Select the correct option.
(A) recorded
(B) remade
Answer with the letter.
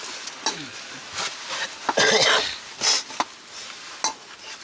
A